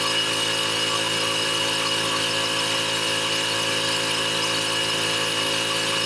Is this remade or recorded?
recorded